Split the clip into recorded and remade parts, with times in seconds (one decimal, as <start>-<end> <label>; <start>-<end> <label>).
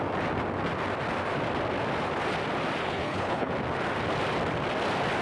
0.0-2.8 recorded; 2.8-3.5 remade; 3.5-5.2 recorded